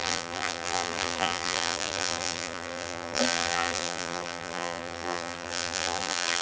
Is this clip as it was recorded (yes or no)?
no